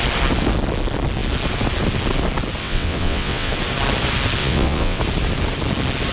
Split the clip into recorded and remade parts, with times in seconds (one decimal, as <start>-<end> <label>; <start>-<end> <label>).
0.0-2.6 recorded; 2.6-3.5 remade; 3.5-4.4 recorded; 4.4-5.0 remade; 5.0-6.1 recorded